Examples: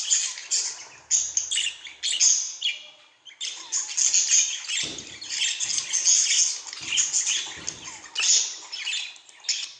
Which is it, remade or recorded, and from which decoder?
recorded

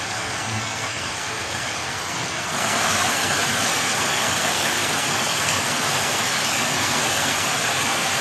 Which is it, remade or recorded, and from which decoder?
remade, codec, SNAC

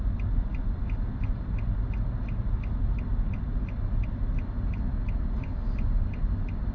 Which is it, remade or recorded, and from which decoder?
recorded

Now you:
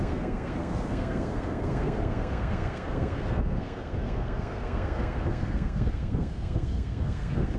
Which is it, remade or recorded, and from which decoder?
remade, codec, SNAC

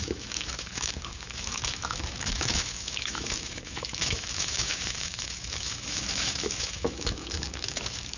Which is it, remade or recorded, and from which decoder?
remade, autoencoder, DAC-VAE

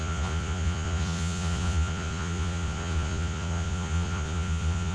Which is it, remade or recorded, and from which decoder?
remade, vocoder, Vocos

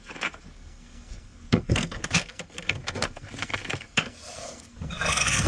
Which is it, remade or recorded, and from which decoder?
remade, codec, SNAC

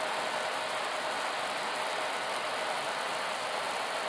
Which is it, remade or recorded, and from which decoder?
recorded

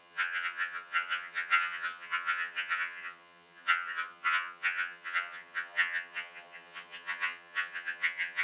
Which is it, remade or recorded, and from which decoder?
remade, vocoder, HiFi-GAN